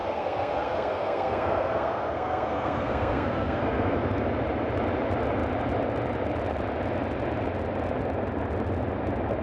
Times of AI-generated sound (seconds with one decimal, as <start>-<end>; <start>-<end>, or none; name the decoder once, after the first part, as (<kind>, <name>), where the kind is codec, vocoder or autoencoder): 0.0-4.2 (codec, SNAC)